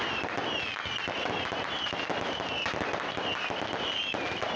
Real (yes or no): yes